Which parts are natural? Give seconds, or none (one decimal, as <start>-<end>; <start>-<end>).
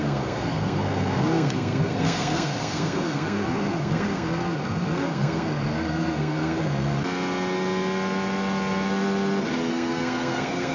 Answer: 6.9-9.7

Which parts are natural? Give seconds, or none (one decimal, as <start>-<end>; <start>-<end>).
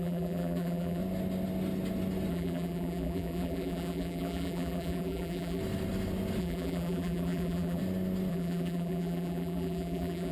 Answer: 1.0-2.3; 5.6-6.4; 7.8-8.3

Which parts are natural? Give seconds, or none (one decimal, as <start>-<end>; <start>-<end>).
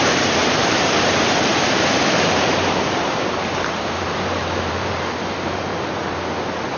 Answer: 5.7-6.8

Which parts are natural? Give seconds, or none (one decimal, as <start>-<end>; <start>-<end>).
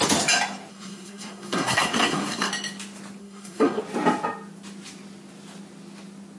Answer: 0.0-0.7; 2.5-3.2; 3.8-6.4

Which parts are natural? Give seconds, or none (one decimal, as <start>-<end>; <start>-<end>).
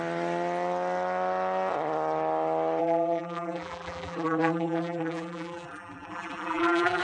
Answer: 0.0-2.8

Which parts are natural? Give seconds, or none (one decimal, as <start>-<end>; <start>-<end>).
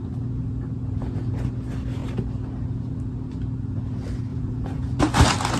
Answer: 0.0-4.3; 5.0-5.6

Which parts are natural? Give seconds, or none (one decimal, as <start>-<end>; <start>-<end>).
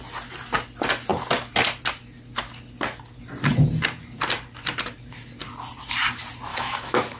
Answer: 0.0-6.5